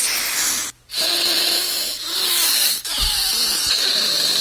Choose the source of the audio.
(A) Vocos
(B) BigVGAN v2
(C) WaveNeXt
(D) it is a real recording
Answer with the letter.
D